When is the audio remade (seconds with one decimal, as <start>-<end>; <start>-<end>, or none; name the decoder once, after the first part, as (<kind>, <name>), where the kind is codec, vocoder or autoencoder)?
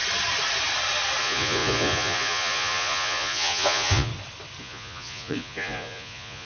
1.2-4.1 (vocoder, Vocos); 4.6-6.4